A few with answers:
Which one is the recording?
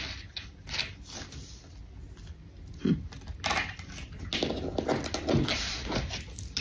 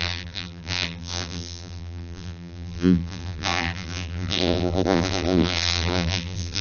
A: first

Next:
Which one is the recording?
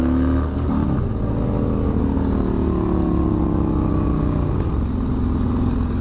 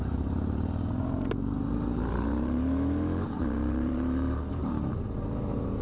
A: first